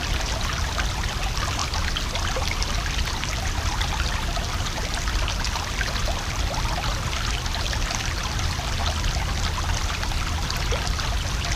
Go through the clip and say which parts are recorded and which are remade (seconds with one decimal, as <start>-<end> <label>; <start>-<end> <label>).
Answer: 0.0-11.6 recorded